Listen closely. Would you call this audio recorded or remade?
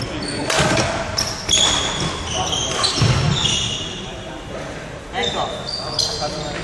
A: recorded